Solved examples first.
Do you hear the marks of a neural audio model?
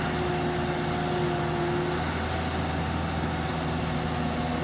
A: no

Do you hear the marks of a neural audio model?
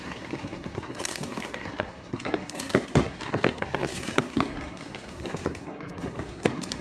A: yes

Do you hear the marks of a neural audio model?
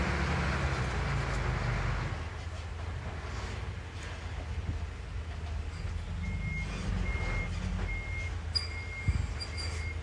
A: no